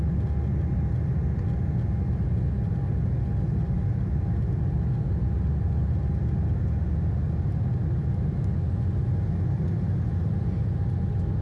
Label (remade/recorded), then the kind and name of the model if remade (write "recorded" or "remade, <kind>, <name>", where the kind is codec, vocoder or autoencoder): recorded